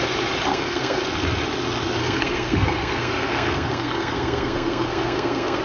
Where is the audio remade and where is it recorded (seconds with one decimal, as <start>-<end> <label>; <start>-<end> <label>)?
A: 0.0-0.5 recorded; 0.5-1.0 remade; 1.0-2.0 recorded; 2.0-5.6 remade